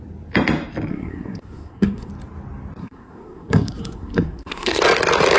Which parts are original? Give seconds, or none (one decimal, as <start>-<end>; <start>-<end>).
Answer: 0.0-0.9; 2.1-2.8; 4.8-5.4